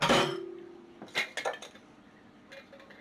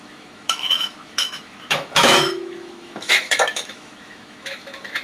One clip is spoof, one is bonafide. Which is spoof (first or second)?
second